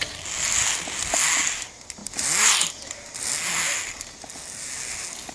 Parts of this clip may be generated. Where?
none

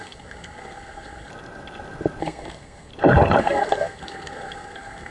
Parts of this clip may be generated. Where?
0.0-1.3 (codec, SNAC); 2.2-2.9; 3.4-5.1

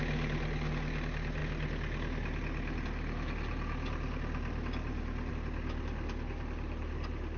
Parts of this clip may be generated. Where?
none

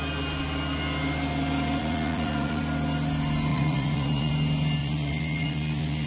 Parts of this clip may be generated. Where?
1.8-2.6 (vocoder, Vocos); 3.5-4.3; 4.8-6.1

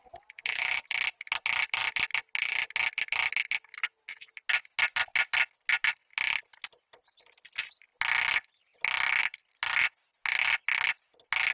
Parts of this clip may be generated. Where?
none

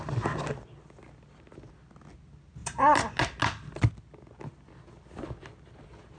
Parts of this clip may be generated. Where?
none

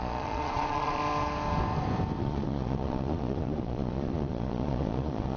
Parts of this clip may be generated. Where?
0.0-1.0 (vocoder, Vocos); 2.2-5.4

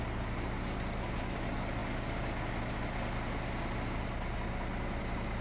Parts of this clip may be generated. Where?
none